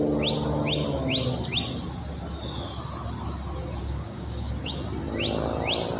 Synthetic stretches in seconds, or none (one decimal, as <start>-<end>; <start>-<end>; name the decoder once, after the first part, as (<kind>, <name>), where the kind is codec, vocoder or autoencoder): 3.8-4.7 (codec, DAC)